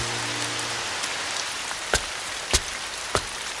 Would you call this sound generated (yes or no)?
no